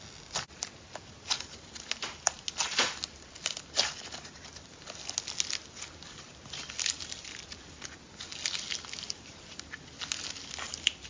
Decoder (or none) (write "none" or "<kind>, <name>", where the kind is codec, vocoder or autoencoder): none